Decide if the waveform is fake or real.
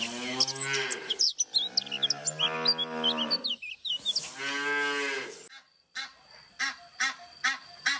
real